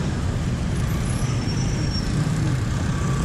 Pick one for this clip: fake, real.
fake